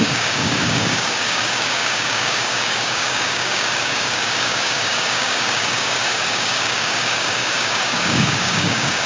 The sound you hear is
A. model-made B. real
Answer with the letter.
A